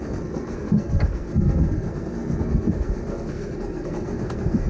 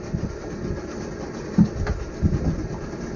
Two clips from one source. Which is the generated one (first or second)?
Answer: first